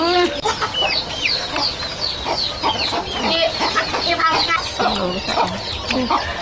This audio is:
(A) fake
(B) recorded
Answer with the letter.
B